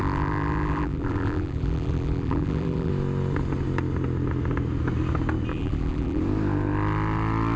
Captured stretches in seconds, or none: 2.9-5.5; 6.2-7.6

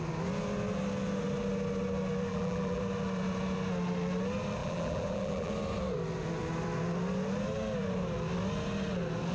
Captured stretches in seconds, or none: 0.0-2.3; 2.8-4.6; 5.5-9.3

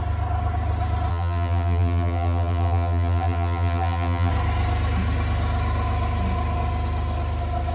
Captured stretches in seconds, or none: 0.0-1.1; 4.3-7.7

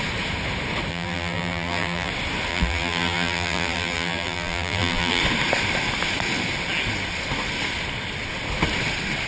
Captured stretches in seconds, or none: 0.0-0.9; 2.1-2.5; 5.2-9.3

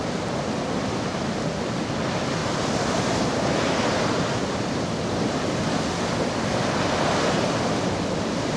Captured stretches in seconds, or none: 0.0-2.4; 4.8-8.6